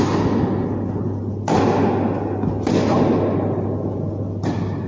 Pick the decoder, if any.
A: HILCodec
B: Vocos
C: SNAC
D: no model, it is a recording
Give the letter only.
D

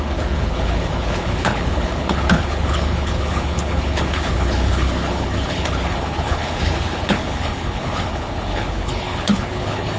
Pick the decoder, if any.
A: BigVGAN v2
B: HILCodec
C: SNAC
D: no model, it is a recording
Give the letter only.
B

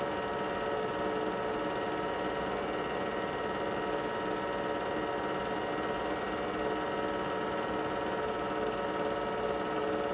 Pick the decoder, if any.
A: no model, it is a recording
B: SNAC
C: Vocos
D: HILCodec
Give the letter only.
A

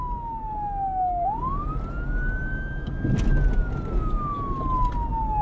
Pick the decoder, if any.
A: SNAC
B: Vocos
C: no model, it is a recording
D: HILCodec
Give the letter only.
C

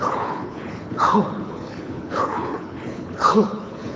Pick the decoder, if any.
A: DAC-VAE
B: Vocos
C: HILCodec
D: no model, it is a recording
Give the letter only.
C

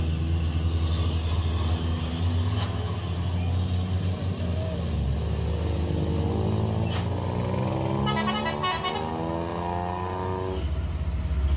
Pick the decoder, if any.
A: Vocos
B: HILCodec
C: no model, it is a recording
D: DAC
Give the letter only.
C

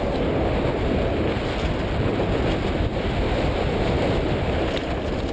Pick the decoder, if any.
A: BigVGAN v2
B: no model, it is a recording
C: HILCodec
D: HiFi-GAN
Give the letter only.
B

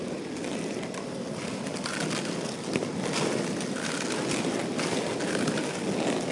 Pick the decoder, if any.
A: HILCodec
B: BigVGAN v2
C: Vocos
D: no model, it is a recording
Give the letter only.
D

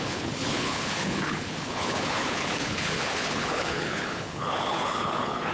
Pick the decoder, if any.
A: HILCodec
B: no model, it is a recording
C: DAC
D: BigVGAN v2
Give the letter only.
A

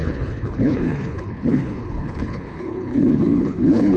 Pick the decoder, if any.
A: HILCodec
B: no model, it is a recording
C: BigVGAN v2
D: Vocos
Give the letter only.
A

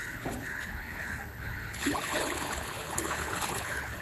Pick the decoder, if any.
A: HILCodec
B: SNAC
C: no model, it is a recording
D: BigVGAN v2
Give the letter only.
A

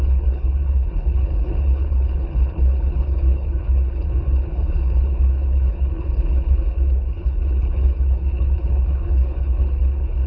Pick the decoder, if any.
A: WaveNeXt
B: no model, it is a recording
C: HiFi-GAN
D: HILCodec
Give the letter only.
D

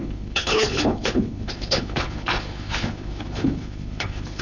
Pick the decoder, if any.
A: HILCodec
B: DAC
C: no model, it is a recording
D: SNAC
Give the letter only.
A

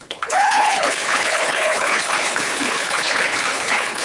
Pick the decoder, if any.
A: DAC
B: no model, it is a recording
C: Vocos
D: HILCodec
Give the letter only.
D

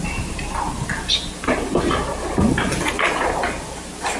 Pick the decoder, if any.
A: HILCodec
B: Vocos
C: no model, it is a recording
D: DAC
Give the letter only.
C